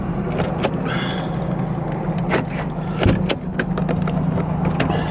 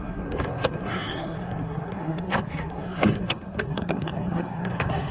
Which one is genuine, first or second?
first